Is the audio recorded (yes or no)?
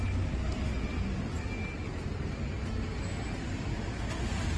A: yes